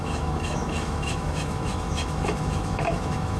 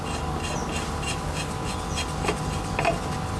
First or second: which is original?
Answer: second